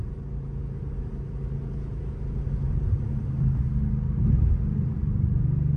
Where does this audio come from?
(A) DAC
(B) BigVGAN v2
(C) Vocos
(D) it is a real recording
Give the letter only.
D